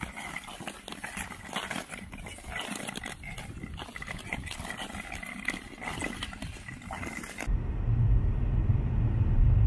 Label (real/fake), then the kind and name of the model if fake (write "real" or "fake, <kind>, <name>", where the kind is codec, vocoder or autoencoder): real